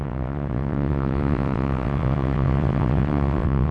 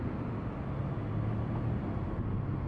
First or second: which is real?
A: second